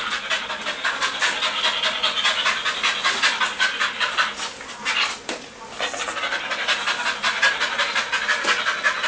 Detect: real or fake real